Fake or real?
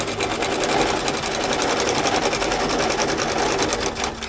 real